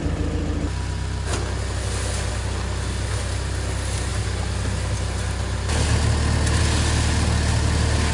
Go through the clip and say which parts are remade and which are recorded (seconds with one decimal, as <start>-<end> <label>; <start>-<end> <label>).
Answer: 0.0-8.1 recorded